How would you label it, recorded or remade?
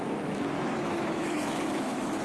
remade